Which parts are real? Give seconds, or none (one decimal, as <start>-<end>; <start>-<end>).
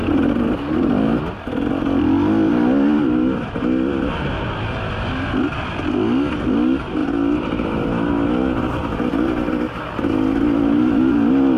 0.0-11.6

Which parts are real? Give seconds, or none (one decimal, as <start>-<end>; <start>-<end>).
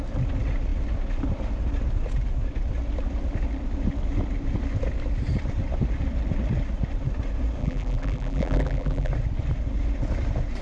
0.0-7.6; 9.1-10.6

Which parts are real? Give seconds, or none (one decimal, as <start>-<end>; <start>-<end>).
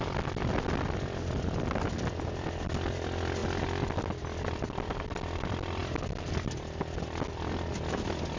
3.4-4.2; 5.8-7.9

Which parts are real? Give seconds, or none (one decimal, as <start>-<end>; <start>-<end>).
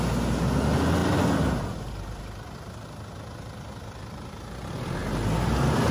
0.0-5.9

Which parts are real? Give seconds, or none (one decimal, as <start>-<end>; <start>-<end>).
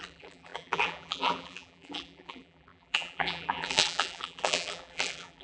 none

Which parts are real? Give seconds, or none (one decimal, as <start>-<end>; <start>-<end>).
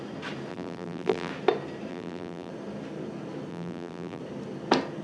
0.0-0.5; 1.3-1.9; 2.5-3.5; 4.2-5.0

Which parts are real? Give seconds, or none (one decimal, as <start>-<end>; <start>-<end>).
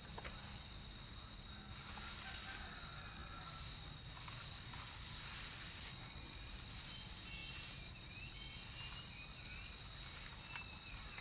0.0-11.2